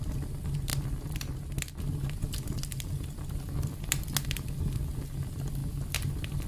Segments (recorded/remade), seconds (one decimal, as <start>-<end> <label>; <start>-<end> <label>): 0.0-6.5 recorded